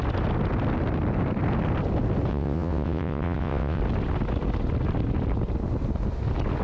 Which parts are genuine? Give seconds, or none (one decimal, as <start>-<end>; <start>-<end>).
0.0-2.3; 3.8-6.6